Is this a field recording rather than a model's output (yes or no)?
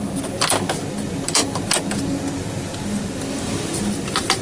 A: yes